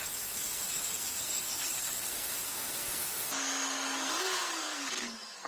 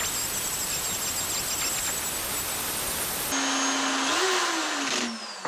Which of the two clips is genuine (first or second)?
second